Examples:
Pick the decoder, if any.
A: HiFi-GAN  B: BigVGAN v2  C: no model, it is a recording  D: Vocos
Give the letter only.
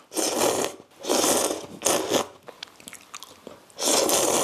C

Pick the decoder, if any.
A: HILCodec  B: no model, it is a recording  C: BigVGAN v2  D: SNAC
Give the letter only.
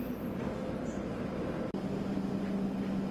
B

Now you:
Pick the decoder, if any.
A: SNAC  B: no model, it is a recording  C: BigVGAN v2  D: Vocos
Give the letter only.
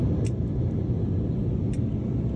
B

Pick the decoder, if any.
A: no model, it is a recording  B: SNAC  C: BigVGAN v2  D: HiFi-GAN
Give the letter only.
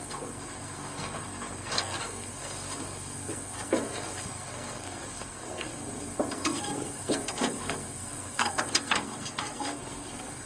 B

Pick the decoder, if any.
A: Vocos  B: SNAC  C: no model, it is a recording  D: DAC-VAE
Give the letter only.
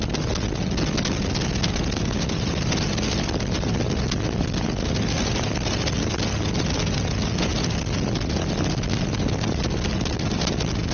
C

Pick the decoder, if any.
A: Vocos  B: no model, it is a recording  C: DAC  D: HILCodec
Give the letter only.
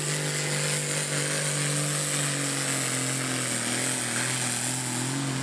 B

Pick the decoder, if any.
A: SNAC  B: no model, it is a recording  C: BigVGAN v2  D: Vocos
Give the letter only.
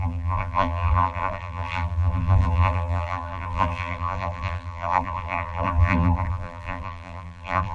C